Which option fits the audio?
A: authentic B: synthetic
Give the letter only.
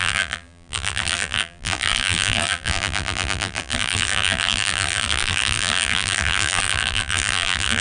B